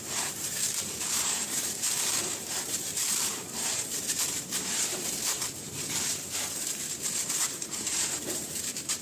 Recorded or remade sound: remade